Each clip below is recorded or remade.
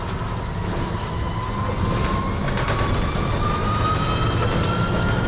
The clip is recorded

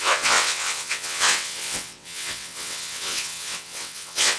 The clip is remade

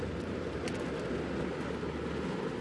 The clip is recorded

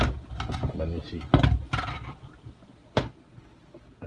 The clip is recorded